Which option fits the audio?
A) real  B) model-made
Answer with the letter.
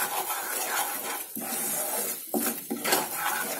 A